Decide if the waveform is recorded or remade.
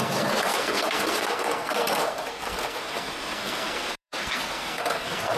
remade